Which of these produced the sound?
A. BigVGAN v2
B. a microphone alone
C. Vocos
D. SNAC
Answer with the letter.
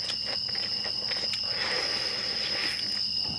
B